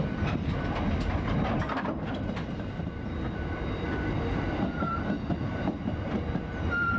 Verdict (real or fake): real